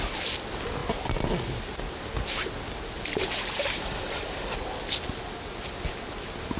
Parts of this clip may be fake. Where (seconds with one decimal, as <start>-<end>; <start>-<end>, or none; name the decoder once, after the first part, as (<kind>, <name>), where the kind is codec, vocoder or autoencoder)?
none